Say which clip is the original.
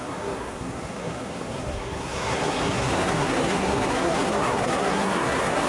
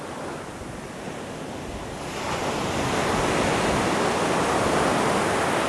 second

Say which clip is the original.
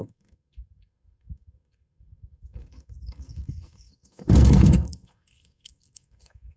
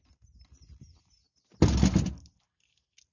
second